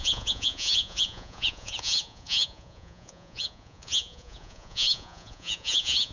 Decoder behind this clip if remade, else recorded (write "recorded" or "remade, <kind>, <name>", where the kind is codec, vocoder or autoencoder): remade, vocoder, Vocos